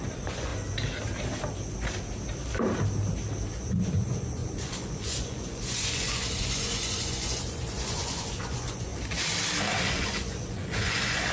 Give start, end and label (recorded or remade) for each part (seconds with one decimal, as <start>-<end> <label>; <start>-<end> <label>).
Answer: 0.0-0.5 remade; 0.5-3.5 recorded; 3.5-8.9 remade; 8.9-9.8 recorded; 9.8-11.3 remade